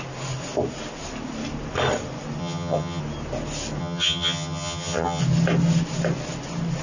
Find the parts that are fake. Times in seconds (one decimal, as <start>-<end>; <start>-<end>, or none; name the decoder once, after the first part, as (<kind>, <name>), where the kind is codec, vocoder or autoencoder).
2.4-3.0 (vocoder, HiFi-GAN); 3.8-5.2

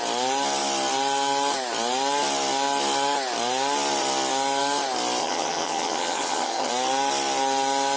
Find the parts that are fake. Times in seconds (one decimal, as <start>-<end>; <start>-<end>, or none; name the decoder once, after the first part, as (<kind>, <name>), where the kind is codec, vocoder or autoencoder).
5.2-6.7 (vocoder, HiFi-GAN)